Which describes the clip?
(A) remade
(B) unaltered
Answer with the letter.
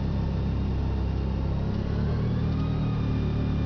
B